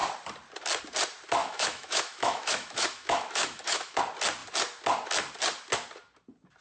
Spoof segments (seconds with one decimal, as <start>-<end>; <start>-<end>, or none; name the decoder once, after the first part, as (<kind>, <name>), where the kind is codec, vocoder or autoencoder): 1.4-4.0 (autoencoder, DAC-VAE)